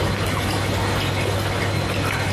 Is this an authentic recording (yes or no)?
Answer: yes